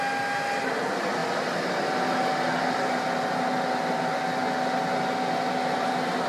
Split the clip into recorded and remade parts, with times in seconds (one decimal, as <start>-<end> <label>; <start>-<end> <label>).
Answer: 0.0-6.3 recorded